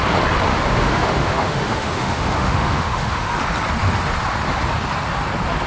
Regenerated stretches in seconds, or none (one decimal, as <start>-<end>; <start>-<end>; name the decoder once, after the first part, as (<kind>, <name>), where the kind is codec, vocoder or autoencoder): 0.5-3.3 (autoencoder, DAC-VAE)